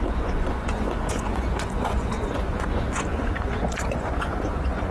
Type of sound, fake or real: fake